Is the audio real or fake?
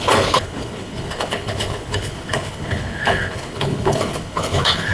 fake